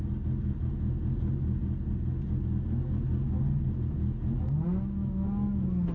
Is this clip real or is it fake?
real